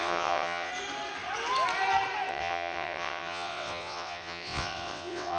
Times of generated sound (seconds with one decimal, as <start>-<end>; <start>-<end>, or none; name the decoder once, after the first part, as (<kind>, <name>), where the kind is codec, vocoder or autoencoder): 0.0-0.7 (vocoder, WaveNeXt); 2.3-5.4

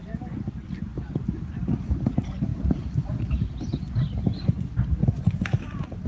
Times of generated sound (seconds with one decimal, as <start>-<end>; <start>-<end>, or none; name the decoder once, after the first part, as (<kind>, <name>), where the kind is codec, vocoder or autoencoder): 1.5-2.1 (vocoder, BigVGAN v2); 2.5-3.1; 5.0-6.1

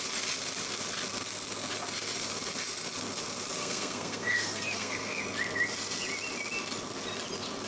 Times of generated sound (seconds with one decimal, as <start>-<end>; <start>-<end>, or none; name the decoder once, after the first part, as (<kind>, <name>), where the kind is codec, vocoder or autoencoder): 3.6-5.2 (codec, SNAC)

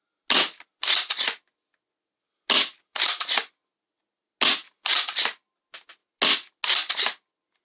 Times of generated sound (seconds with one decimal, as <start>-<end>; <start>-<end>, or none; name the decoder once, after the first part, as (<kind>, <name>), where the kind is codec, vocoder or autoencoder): none